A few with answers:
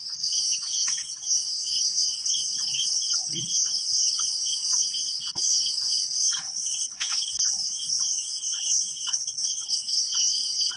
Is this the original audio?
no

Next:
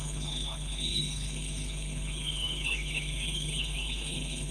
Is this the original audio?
no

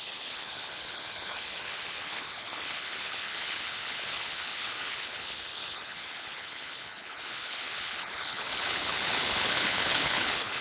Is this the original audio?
no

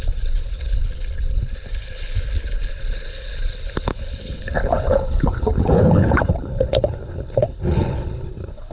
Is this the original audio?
no